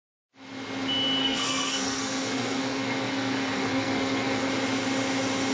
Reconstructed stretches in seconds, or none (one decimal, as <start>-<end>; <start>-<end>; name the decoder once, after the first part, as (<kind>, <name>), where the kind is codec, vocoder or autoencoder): 1.2-4.5 (codec, SNAC)